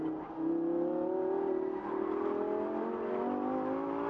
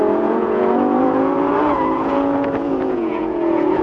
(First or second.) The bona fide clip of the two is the first